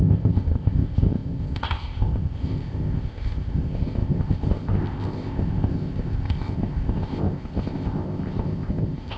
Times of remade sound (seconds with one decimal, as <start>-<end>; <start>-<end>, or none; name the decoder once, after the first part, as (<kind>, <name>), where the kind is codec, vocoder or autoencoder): 0.0-9.2 (codec, ZipCodec)